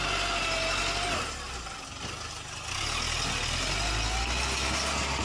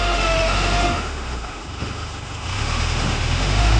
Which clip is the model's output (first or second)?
second